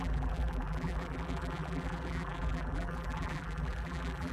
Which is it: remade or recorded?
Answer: remade